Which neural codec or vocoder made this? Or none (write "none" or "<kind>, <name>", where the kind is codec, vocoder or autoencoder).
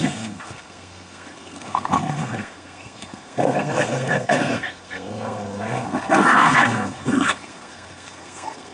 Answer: codec, SNAC